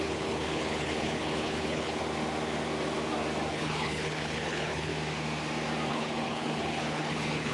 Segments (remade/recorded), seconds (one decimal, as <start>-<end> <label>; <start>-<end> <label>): 0.0-2.0 remade; 2.0-3.5 recorded; 3.5-4.9 remade; 4.9-5.9 recorded; 5.9-7.5 remade